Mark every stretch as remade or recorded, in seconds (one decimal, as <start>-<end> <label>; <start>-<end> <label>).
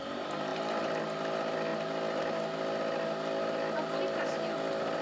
0.0-5.0 recorded